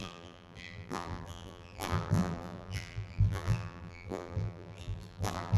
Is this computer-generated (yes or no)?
yes